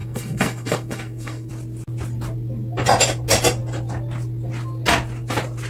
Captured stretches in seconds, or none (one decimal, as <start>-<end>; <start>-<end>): 1.5-5.7